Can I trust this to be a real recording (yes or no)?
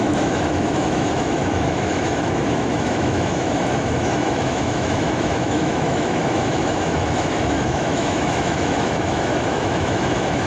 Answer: no